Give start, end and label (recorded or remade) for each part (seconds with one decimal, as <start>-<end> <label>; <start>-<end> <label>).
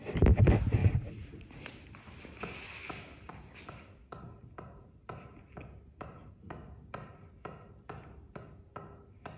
0.0-0.8 recorded; 0.8-1.6 remade; 1.6-9.4 recorded